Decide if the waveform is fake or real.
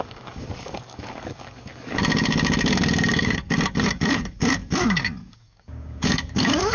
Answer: fake